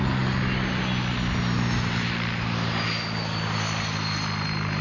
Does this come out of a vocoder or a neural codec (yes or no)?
no